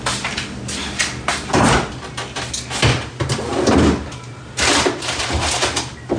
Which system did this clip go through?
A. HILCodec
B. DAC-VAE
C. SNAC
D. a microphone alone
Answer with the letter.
D